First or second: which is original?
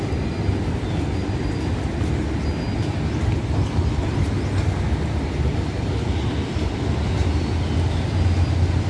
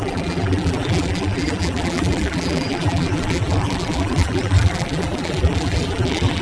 first